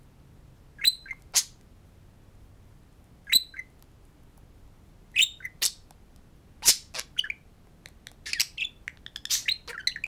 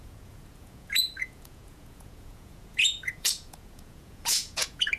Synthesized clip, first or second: second